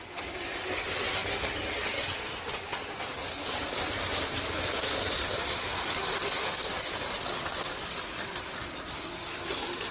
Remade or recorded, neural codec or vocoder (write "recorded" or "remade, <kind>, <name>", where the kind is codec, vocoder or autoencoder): recorded